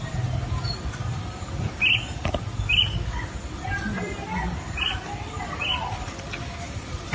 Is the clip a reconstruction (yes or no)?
no